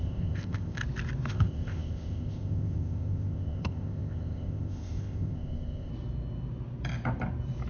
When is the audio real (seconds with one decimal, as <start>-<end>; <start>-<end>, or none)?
0.8-1.3; 5.9-7.7